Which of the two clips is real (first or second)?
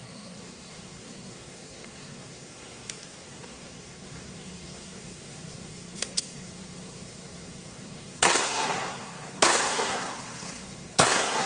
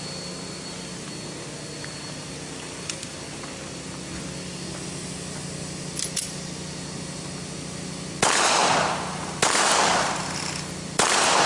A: second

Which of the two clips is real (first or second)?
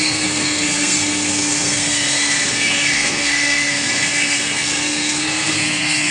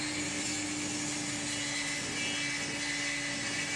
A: second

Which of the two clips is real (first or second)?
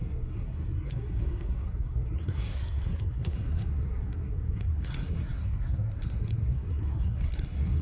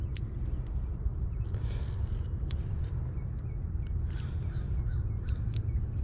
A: second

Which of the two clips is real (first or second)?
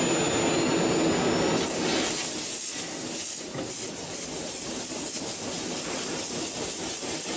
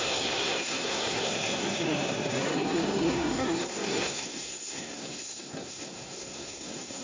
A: first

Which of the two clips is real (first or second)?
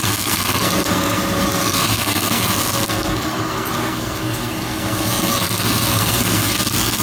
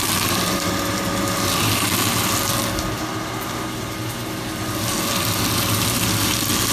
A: second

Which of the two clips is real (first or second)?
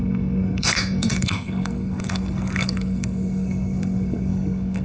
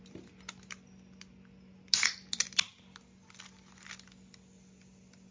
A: second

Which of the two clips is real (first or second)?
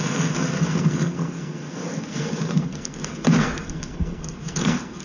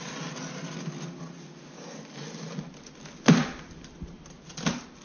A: second